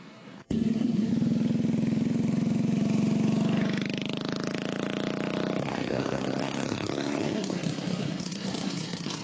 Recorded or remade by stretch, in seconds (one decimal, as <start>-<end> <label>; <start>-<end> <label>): 0.0-1.1 remade; 1.1-5.6 recorded; 5.6-9.2 remade